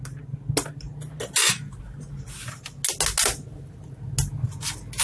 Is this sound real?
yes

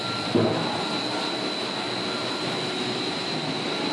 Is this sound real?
yes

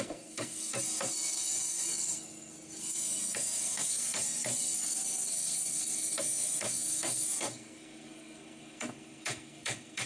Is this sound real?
no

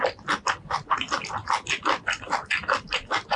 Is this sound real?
yes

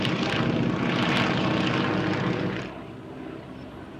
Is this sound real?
yes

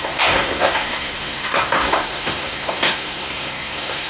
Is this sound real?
no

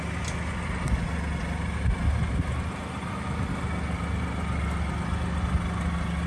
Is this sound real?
yes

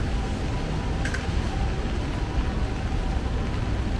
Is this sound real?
yes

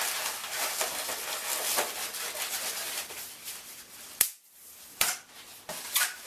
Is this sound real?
no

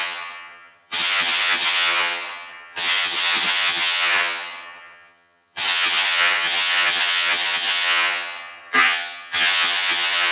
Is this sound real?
no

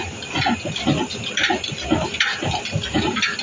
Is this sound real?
yes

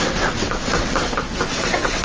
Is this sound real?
no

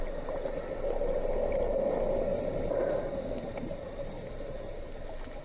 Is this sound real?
yes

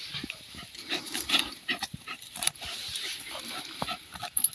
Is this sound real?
no